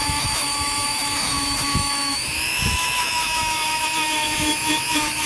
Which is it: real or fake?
fake